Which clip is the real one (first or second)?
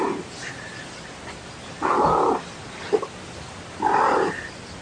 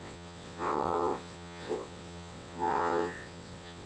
first